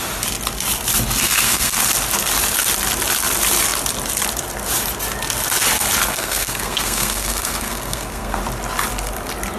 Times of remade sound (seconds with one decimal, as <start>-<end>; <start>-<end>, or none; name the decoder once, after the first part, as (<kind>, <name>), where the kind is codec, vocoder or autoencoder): 1.2-1.8 (codec, SNAC); 6.1-8.4